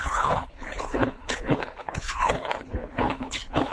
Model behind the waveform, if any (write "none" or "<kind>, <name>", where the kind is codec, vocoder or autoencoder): codec, HILCodec